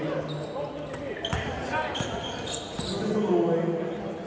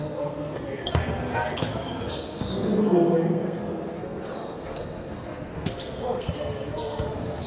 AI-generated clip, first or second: second